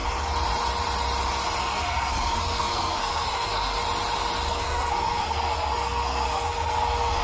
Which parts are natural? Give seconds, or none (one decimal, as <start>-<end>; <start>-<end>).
0.0-1.6; 3.8-4.5